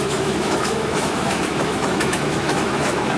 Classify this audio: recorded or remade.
remade